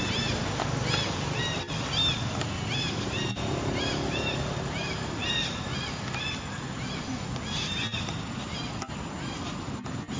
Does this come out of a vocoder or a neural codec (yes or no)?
no